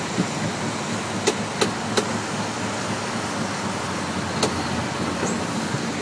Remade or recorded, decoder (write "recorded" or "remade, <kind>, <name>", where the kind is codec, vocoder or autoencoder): recorded